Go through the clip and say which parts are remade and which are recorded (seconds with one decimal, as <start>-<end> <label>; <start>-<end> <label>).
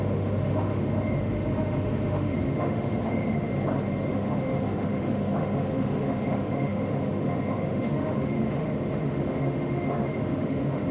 0.0-3.5 remade; 3.5-4.1 recorded; 4.1-10.9 remade